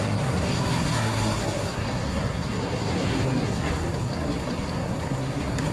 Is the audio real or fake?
fake